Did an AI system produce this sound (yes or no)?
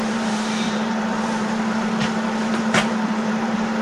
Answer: yes